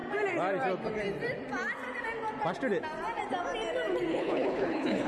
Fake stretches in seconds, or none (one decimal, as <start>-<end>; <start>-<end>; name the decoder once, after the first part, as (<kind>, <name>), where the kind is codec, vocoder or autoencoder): 4.1-5.1 (codec, HILCodec)